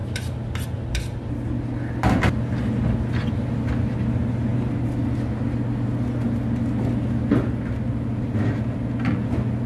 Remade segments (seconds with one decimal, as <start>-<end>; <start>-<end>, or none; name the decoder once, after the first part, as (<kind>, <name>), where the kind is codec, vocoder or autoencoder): none